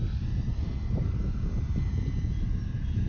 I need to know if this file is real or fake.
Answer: real